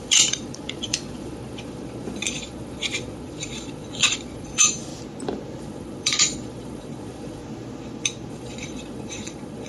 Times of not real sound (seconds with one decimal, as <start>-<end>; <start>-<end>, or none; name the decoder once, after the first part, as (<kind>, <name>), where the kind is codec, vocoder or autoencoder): 0.0-4.9 (vocoder, Vocos); 5.6-7.4; 8.3-9.7